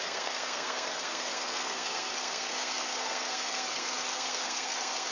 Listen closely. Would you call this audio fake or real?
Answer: fake